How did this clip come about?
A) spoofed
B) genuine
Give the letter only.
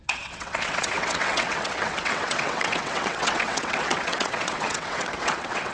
A